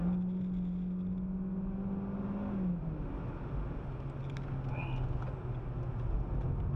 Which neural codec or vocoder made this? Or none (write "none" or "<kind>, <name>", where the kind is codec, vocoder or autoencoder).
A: none